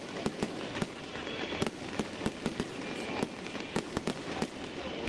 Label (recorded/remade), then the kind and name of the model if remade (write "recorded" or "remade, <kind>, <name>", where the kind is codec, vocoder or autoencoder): recorded